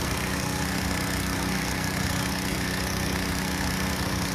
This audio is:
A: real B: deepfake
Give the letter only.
B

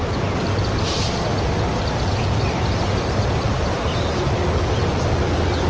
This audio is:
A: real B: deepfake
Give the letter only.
A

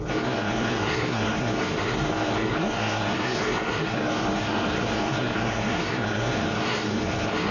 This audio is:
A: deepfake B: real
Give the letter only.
A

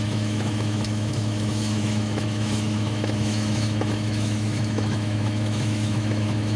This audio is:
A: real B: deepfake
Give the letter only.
B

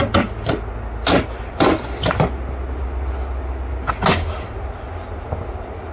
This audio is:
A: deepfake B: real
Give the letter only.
B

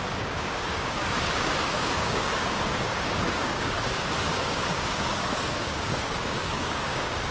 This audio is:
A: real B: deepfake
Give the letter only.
B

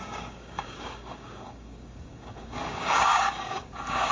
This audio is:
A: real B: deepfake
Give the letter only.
B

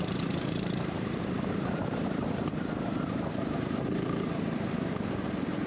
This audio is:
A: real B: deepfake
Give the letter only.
B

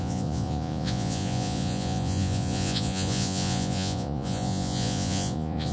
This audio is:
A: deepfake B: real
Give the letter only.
A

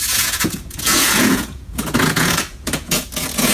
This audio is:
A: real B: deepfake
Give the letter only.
B